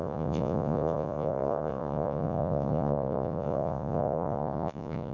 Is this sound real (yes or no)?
no